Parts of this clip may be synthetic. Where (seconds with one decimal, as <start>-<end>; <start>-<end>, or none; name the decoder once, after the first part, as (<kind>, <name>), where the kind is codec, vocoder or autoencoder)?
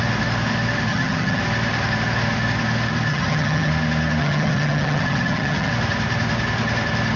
0.9-1.4 (vocoder, HiFi-GAN); 3.1-3.7; 4.2-5.7